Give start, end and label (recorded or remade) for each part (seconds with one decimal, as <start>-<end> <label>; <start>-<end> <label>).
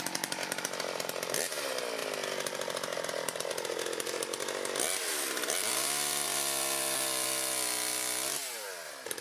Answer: 0.0-9.2 recorded